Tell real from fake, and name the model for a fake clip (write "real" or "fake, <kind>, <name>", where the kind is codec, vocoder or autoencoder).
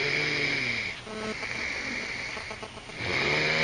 real